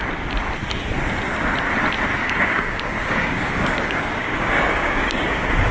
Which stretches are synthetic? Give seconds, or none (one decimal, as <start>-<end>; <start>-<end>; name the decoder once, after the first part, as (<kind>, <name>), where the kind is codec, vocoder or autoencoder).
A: 2.2-5.7 (codec, DAC)